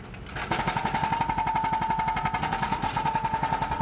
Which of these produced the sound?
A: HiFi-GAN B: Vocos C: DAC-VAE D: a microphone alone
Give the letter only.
D